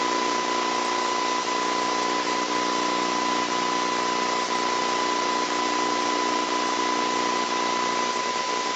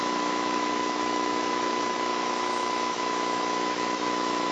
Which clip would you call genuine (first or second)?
first